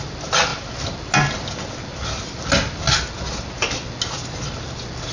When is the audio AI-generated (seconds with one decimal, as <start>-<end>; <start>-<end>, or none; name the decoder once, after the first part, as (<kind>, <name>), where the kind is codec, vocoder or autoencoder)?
none